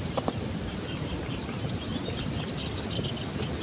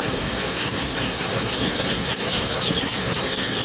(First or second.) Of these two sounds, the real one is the first